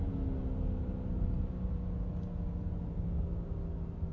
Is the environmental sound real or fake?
real